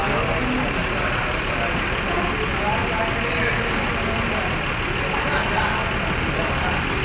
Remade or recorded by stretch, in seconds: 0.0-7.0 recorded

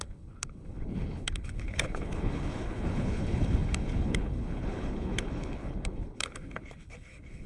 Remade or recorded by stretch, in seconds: 0.0-7.5 remade

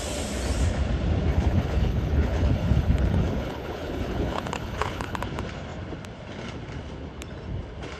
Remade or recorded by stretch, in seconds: 0.0-1.3 recorded; 1.3-5.2 remade; 5.2-8.0 recorded

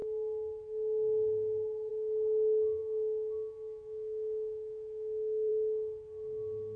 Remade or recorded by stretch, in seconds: 0.0-2.8 recorded; 2.8-5.5 remade; 5.5-6.8 recorded

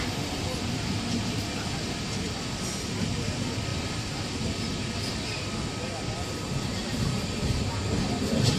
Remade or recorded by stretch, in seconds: 0.0-8.6 recorded

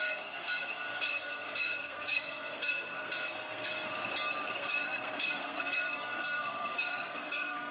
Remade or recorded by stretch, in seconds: 0.0-3.9 remade; 3.9-4.5 recorded; 4.5-7.7 remade

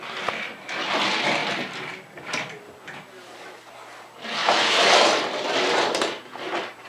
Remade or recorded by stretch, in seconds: 0.0-4.4 recorded; 4.4-5.1 remade; 5.1-6.9 recorded

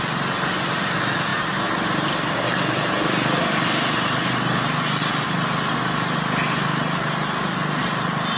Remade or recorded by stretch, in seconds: 0.0-8.4 recorded